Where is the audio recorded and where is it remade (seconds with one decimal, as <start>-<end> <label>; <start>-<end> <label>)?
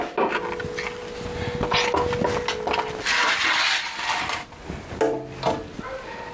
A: 0.0-6.3 recorded